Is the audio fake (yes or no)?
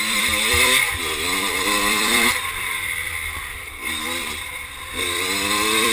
yes